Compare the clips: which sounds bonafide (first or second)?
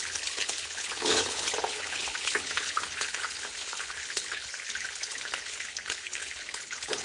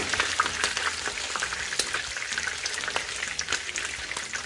second